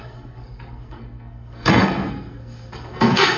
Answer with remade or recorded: remade